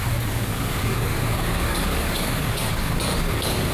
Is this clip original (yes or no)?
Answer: no